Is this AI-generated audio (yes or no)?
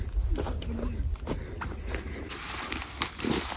no